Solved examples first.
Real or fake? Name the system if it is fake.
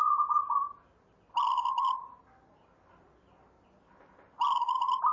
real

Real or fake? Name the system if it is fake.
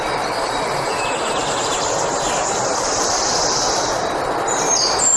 real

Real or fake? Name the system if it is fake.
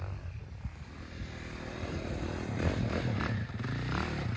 real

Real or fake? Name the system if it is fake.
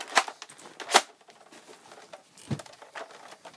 real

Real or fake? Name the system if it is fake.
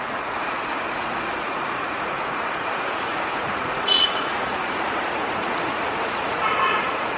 fake, vocoder, Vocos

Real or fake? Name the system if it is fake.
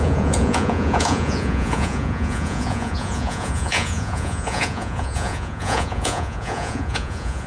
fake, vocoder, Vocos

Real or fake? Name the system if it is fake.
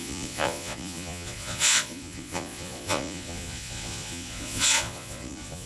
fake, vocoder, Vocos